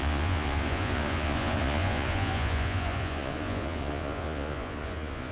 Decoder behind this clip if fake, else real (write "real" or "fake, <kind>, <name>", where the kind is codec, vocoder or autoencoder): fake, vocoder, Vocos